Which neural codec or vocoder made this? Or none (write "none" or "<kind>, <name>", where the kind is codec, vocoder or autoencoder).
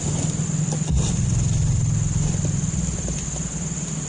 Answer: none